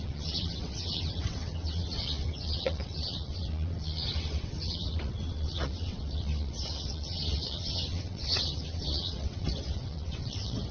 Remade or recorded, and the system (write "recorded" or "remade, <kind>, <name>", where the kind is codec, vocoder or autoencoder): remade, vocoder, WaveNeXt